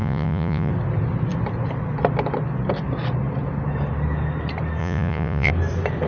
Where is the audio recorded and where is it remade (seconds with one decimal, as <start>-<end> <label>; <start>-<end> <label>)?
0.0-0.7 remade; 0.7-4.8 recorded; 4.8-5.5 remade; 5.5-6.1 recorded